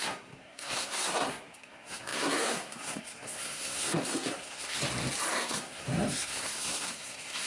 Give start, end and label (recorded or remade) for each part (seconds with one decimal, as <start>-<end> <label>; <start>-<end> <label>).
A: 0.0-4.8 remade; 4.8-5.3 recorded; 5.3-7.5 remade